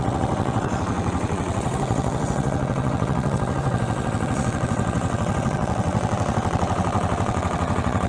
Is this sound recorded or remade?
remade